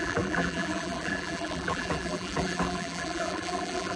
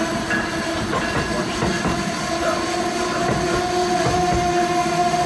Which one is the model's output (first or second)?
first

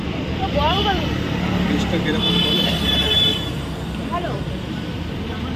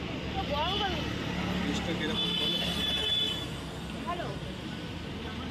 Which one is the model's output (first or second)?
first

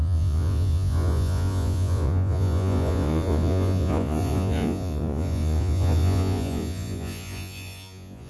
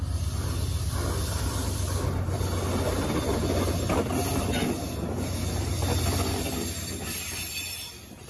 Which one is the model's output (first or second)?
first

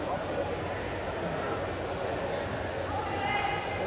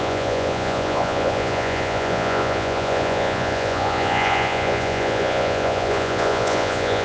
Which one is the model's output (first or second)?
second